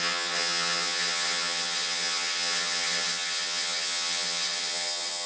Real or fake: fake